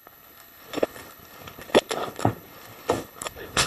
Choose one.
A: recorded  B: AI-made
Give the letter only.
B